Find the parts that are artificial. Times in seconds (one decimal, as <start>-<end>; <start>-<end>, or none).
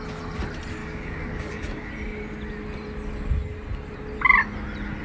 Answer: 0.8-1.9